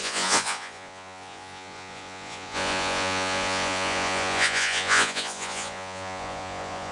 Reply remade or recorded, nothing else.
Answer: remade